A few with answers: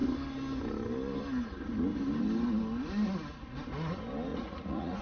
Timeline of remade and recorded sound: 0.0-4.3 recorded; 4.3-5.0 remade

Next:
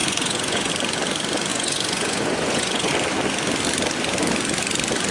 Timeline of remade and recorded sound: 0.0-0.7 remade; 0.7-1.5 recorded; 1.5-2.9 remade; 2.9-5.1 recorded

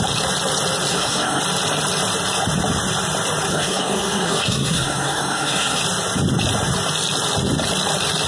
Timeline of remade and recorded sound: 0.0-0.9 recorded; 0.9-1.4 remade; 1.4-3.5 recorded; 3.5-5.8 remade; 5.8-8.3 recorded